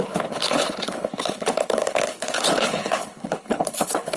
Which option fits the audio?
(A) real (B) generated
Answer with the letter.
B